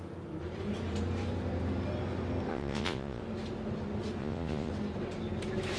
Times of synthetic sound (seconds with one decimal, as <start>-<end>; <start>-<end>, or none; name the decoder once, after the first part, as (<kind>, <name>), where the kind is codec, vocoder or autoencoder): 2.5-3.2 (vocoder, Vocos); 4.2-4.7